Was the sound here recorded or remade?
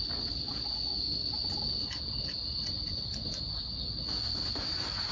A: recorded